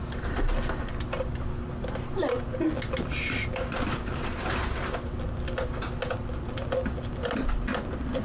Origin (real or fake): real